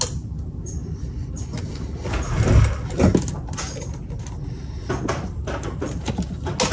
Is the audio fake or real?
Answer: real